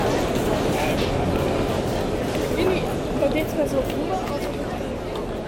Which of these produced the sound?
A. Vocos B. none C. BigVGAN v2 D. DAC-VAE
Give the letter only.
B